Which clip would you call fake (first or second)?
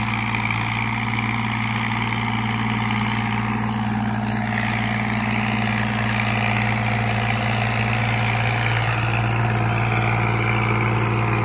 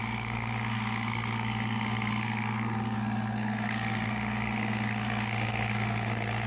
second